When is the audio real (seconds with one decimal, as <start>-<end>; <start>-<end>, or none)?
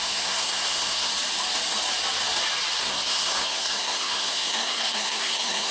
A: 1.1-2.8